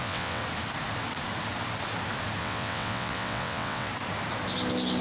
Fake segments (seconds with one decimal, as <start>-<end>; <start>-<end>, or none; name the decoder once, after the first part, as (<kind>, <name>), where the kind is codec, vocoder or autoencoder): 0.0-0.4 (vocoder, WaveNeXt); 2.4-3.9